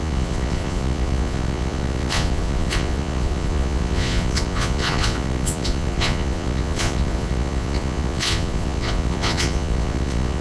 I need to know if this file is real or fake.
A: fake